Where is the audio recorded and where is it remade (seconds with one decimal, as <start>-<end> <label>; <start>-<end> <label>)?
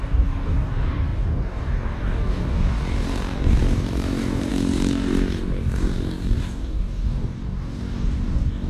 0.0-8.7 remade